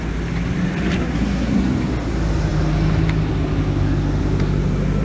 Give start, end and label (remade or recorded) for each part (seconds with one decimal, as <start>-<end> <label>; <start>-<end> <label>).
0.0-1.0 recorded; 1.0-1.6 remade; 1.6-5.0 recorded